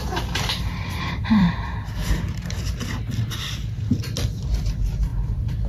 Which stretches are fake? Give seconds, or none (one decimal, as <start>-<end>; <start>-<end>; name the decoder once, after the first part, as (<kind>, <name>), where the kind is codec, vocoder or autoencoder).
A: 0.0-5.7 (vocoder, BigVGAN v2)